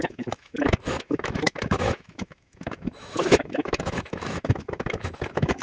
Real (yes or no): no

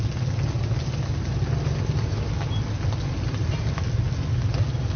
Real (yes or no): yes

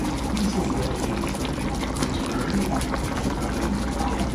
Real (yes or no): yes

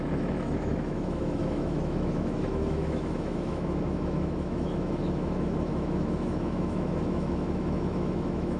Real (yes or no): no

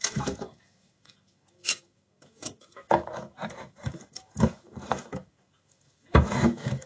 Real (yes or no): no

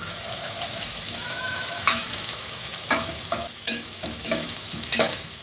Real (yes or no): no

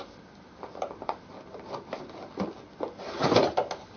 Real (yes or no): yes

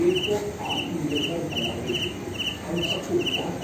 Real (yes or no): yes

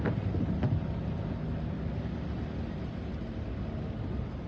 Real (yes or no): yes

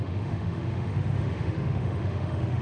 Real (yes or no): no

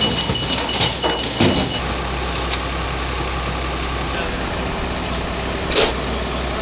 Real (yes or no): yes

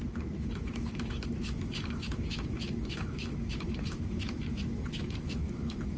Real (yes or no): no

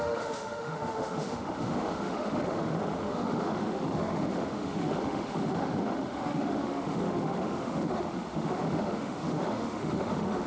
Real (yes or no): no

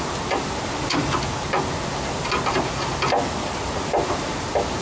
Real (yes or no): yes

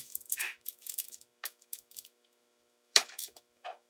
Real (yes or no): no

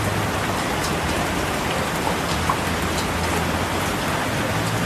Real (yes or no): yes